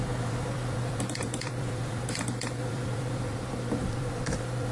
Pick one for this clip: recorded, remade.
remade